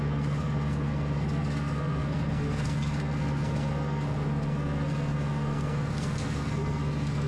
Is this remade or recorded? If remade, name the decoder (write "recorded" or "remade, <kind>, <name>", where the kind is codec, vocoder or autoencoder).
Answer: remade, codec, SNAC